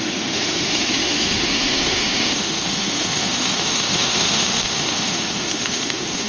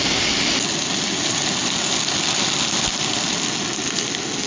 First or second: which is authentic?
second